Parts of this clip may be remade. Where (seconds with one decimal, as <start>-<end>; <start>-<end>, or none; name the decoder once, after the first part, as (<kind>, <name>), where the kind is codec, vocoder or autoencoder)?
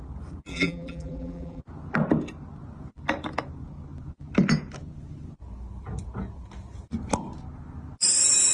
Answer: 0.5-1.6 (vocoder, BigVGAN v2)